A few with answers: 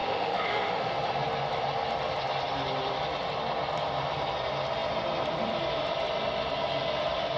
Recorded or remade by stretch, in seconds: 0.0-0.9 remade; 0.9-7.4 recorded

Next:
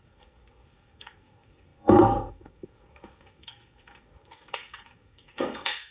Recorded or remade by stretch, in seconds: 0.0-5.9 remade

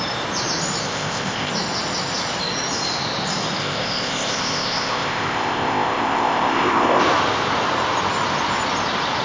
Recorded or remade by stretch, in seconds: 0.0-0.8 recorded; 0.8-1.5 remade; 1.5-3.6 recorded; 3.6-7.0 remade; 7.0-9.2 recorded

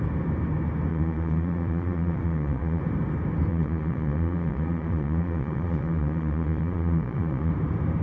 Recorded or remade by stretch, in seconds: 0.0-0.9 recorded; 0.9-2.8 remade; 2.8-3.5 recorded; 3.5-7.5 remade; 7.5-8.0 recorded

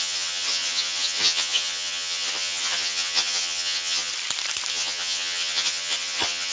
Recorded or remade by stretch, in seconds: 0.0-4.1 remade; 4.1-4.7 recorded; 4.7-6.5 remade

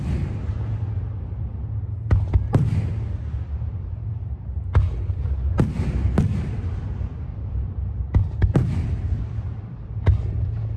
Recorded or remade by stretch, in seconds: 0.0-7.3 recorded; 7.3-10.8 remade

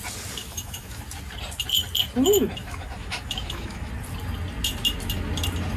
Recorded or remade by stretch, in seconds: 0.0-0.4 recorded; 0.4-1.0 remade; 1.0-2.6 recorded; 2.6-3.9 remade; 3.9-5.8 recorded